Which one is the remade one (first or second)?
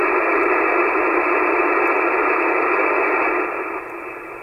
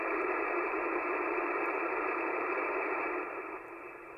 second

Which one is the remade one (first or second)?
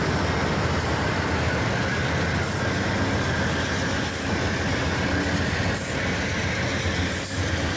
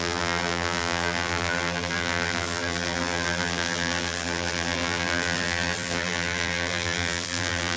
second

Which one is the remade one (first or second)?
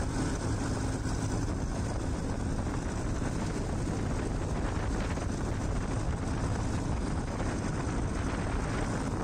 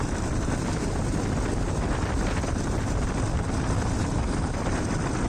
second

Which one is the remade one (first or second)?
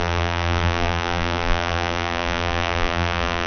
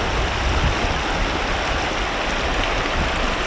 first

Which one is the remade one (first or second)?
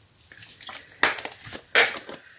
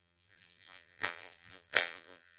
second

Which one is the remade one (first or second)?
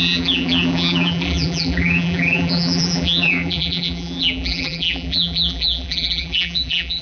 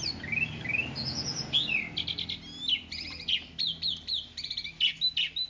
first